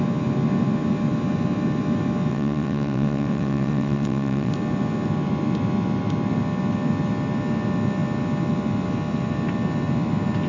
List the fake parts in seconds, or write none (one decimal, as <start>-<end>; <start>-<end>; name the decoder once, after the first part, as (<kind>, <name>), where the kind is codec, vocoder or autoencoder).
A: 2.3-4.5 (vocoder, WaveNeXt)